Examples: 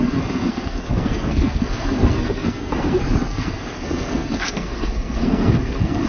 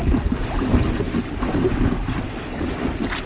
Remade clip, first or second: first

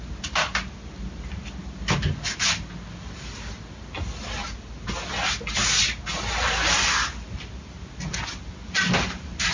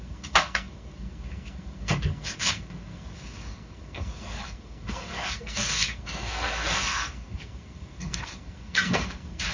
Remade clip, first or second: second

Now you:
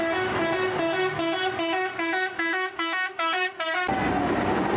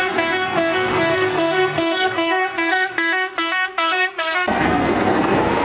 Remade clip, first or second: second